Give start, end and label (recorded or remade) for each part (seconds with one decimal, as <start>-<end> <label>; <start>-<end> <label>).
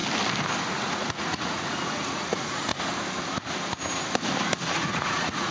0.0-0.7 recorded; 0.7-2.7 remade; 2.7-4.7 recorded; 4.7-5.5 remade